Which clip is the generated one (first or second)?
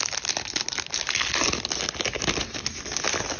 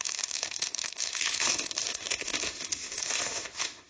second